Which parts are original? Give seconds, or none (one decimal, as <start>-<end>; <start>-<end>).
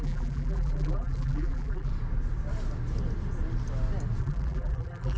1.9-4.2